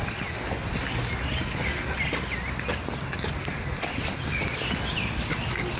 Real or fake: real